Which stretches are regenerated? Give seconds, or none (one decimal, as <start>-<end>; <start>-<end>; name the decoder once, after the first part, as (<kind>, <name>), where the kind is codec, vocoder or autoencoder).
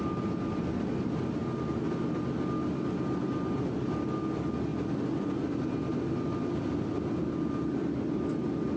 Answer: none